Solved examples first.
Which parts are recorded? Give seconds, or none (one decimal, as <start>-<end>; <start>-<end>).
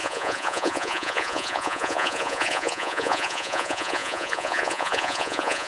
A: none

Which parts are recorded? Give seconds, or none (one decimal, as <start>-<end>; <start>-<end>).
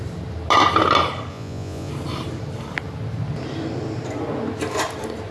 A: 0.0-1.3; 1.9-5.3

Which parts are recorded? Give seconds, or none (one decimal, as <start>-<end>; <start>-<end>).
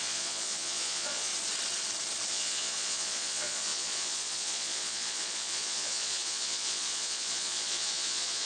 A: 1.3-2.3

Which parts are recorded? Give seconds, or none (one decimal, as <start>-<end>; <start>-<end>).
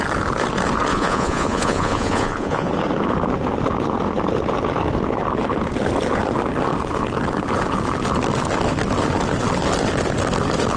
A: 0.0-0.9; 2.7-10.8